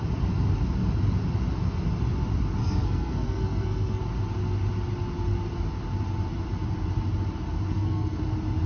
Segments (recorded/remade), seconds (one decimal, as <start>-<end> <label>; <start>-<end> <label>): 0.0-2.6 recorded; 2.6-4.0 remade; 4.0-7.7 recorded; 7.7-8.2 remade; 8.2-8.7 recorded